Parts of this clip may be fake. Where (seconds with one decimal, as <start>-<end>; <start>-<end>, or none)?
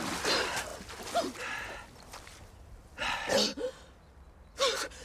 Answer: none